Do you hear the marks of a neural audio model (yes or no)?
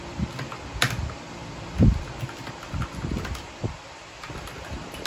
no